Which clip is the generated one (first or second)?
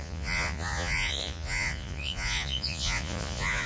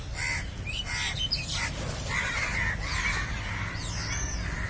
first